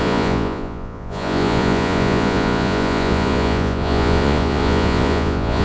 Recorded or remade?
remade